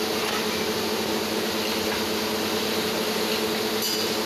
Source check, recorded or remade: recorded